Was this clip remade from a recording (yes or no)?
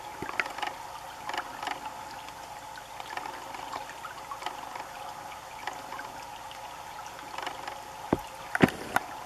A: no